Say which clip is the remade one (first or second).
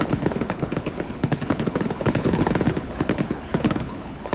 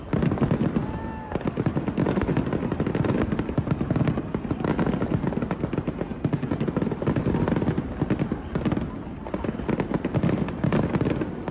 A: first